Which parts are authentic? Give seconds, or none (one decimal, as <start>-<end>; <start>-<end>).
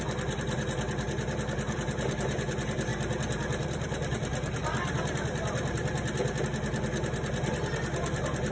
0.0-8.5